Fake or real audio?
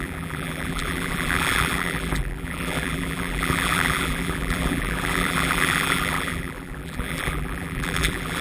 fake